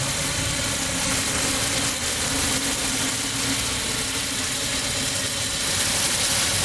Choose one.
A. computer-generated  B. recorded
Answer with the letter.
B